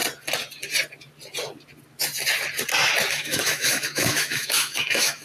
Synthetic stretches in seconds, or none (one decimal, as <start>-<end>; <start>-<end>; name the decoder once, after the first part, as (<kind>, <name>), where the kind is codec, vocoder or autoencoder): 3.1-5.2 (autoencoder, DAC-VAE)